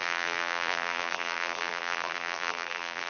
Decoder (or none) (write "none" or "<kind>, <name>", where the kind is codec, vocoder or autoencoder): vocoder, BigVGAN v2